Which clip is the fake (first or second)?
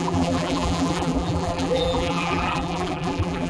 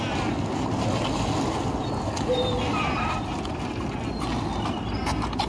first